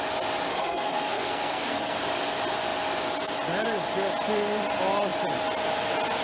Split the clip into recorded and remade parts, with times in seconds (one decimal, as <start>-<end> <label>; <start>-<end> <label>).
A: 0.0-0.5 recorded; 0.5-2.0 remade; 2.0-6.2 recorded